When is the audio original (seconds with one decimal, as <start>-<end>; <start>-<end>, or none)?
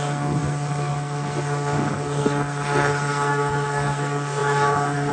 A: none